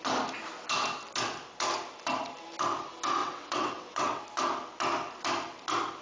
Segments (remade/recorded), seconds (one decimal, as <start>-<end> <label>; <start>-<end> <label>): 0.0-3.2 recorded; 3.2-4.2 remade; 4.2-6.0 recorded